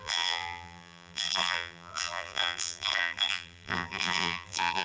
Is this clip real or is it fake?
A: fake